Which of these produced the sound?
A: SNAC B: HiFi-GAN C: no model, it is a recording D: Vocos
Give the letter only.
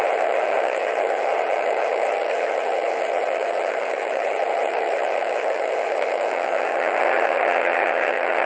B